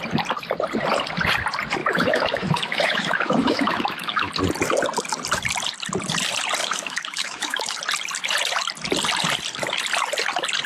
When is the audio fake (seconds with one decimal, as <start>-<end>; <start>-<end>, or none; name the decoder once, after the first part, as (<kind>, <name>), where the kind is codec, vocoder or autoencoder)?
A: 1.8-4.3 (autoencoder, DAC-VAE); 6.6-7.8